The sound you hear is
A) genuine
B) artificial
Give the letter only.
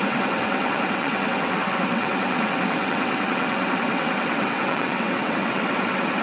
B